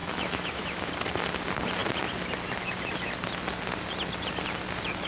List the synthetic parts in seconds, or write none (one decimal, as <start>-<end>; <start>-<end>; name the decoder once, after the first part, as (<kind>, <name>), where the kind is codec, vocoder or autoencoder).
0.0-0.9 (autoencoder, DAC-VAE)